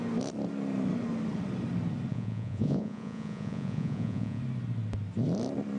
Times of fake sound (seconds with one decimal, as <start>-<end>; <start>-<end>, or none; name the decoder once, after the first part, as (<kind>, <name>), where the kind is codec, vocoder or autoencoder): 2.1-4.4 (vocoder, Vocos)